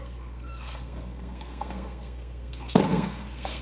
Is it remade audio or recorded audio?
remade